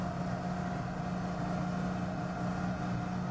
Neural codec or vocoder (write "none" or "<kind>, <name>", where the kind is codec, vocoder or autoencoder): none